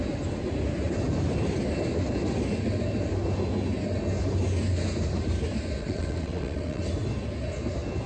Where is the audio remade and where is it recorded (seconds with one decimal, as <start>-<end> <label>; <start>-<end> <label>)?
0.0-5.8 recorded; 5.8-6.8 remade; 6.8-8.1 recorded